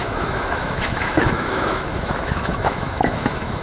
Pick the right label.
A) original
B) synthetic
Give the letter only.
B